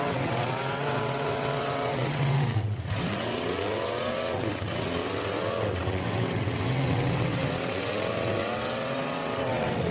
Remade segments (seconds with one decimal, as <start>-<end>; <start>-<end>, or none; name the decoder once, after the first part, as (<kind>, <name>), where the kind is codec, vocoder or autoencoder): 0.0-9.9 (vocoder, WaveNeXt)